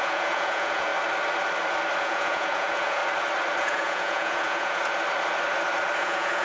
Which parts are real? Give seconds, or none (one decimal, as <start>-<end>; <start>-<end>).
0.9-2.0; 3.0-3.6; 4.8-6.0